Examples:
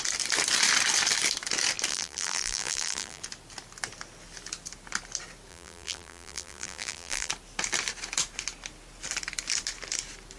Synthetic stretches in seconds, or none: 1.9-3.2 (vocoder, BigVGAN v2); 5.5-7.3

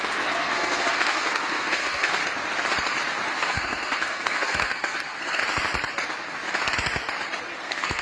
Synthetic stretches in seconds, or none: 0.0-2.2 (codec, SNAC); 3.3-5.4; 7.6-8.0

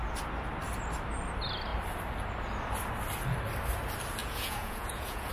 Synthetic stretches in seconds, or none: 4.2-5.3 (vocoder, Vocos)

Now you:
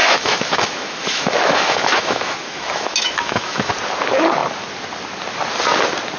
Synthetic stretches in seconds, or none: 0.0-3.7 (autoencoder, DAC-VAE)

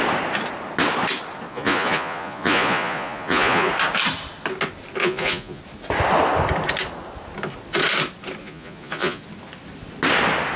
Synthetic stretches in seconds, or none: 1.5-3.7 (vocoder, Vocos); 5.0-5.6; 8.4-9.2

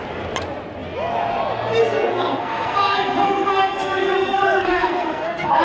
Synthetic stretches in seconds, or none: 1.8-5.6 (codec, SNAC)

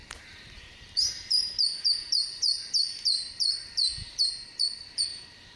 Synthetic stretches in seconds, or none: 0.0-5.6 (vocoder, BigVGAN v2)

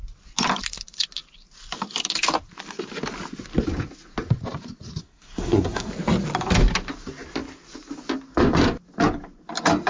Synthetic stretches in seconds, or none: 5.0-5.9 (codec, SNAC)